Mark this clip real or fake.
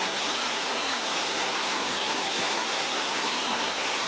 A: fake